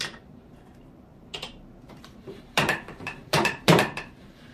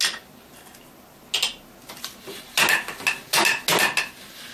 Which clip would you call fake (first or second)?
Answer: first